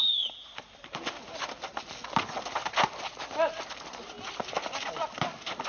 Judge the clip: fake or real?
real